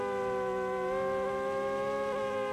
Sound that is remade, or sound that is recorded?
recorded